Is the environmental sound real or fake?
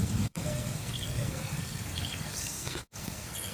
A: fake